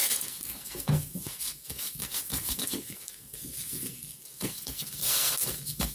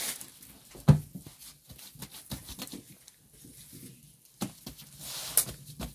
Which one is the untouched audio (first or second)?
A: second